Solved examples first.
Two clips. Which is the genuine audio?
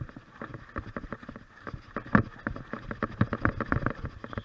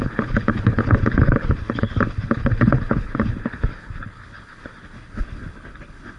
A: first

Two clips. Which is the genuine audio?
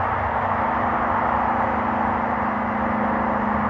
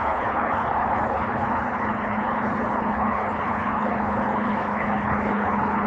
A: first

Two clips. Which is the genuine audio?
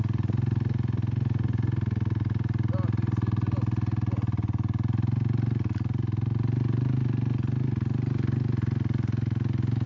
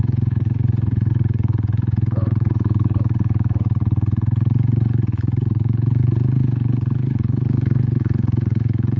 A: first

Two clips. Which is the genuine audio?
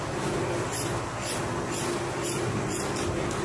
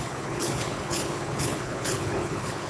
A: first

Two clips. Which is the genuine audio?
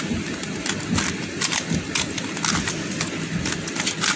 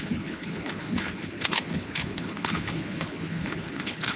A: first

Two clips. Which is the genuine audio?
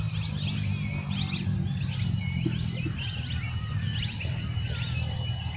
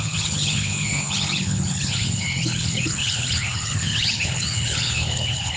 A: first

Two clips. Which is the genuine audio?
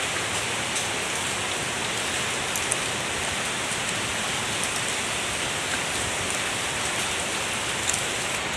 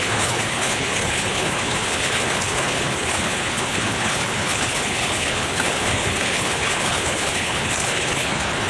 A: first